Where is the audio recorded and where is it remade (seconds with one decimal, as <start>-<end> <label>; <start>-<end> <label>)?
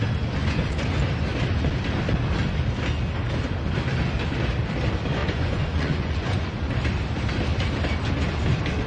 0.0-0.4 recorded; 0.4-0.9 remade; 0.9-5.2 recorded; 5.2-6.5 remade; 6.5-8.9 recorded